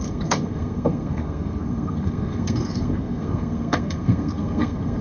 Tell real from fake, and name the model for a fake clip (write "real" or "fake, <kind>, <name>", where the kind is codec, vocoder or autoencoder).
fake, codec, SNAC